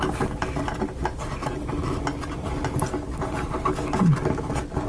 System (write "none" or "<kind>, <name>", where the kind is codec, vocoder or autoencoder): none